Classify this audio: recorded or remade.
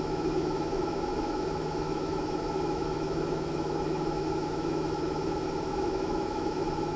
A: remade